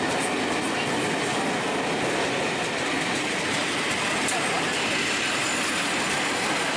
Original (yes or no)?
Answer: yes